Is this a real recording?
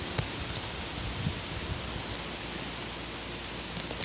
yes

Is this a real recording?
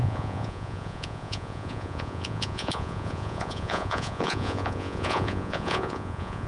no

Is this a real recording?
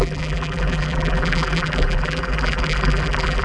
no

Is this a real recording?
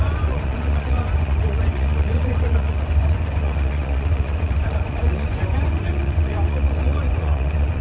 no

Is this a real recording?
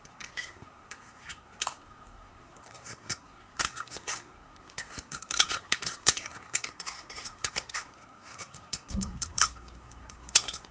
no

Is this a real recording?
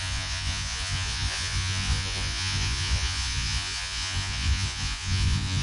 no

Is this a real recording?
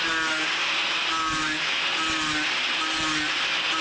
yes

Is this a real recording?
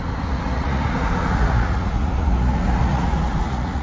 no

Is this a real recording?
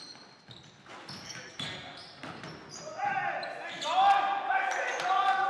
yes